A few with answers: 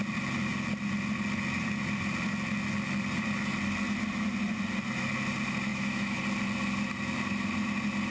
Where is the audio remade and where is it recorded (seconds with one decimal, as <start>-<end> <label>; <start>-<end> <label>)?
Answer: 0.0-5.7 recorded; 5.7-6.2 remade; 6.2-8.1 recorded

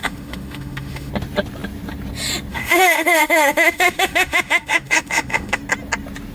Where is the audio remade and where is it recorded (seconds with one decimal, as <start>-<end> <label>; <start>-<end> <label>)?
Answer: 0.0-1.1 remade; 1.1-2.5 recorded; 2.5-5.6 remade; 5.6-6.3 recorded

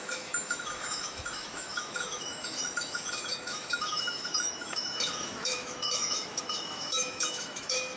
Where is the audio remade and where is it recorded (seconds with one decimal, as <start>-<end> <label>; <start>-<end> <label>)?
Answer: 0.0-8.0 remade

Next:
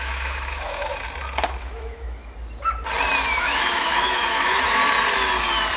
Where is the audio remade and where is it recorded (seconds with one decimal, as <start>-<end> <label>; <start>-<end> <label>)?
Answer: 0.0-0.9 remade; 0.9-1.6 recorded; 1.6-2.2 remade; 2.2-3.3 recorded; 3.3-4.8 remade; 4.8-5.8 recorded

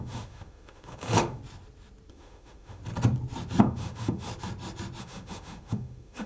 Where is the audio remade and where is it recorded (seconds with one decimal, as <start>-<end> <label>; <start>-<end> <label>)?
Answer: 0.0-1.4 remade; 1.4-2.1 recorded; 2.1-2.8 remade; 2.8-3.6 recorded; 3.6-4.3 remade; 4.3-5.0 recorded; 5.0-6.3 remade